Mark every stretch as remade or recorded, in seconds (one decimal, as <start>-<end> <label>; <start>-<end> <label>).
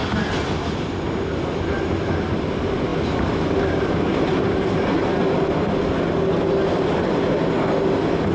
0.0-5.2 recorded; 5.2-5.8 remade; 5.8-8.3 recorded